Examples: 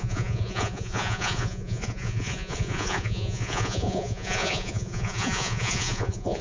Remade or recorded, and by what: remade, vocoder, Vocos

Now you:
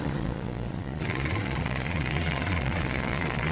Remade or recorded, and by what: remade, vocoder, Vocos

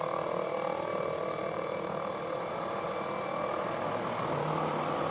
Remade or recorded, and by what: recorded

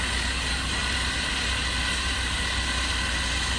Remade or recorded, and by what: recorded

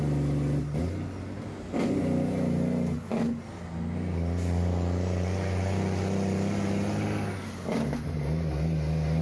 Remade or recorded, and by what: recorded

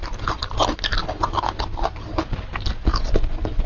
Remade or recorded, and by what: recorded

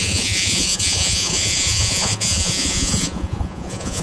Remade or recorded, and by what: remade, vocoder, Vocos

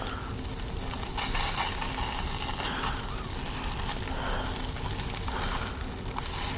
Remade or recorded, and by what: recorded